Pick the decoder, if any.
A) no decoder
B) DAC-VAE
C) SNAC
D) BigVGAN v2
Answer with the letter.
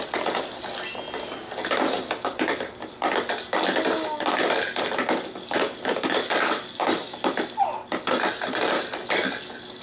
A